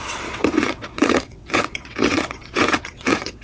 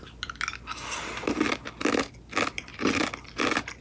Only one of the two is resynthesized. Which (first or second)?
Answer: first